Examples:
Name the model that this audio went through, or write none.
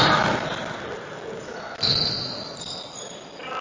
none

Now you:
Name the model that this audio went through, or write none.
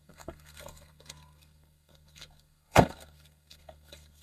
codec, SNAC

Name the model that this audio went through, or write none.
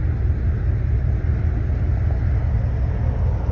none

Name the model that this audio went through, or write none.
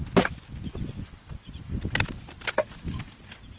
none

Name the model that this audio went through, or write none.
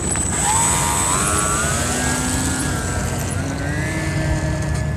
none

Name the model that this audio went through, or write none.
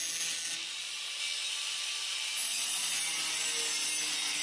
none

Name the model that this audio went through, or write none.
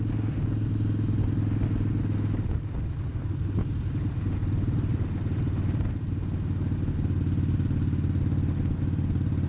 none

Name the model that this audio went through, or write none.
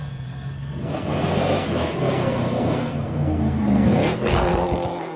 codec, SNAC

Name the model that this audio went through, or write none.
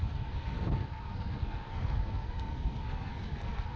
codec, SNAC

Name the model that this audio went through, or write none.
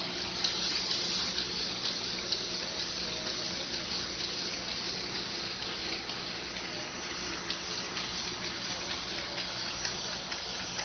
none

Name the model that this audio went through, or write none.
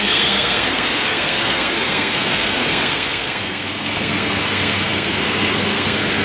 codec, SNAC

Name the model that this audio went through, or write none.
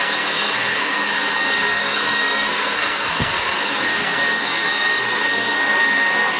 codec, SNAC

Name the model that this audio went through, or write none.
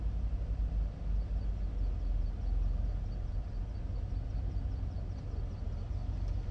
none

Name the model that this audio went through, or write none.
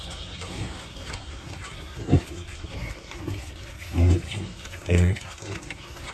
codec, SNAC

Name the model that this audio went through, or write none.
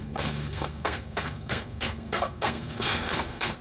codec, SNAC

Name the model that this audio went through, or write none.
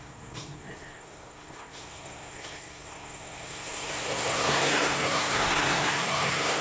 codec, SNAC